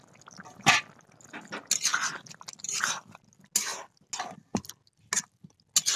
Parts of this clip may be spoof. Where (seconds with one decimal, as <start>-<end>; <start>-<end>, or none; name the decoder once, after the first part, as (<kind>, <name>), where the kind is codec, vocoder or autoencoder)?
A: none